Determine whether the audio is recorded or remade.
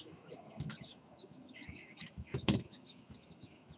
remade